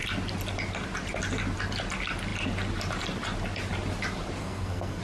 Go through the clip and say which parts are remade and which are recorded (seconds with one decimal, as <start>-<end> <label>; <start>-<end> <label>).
0.0-4.4 recorded; 4.4-5.0 remade